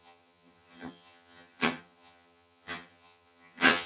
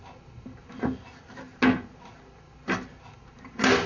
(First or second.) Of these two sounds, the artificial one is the first